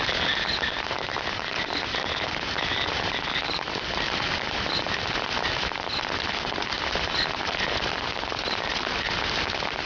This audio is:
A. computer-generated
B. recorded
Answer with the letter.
B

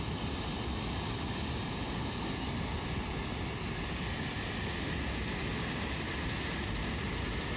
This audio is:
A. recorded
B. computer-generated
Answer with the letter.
A